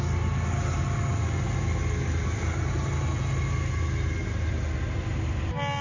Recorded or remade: recorded